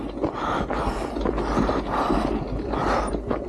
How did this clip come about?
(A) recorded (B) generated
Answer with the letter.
A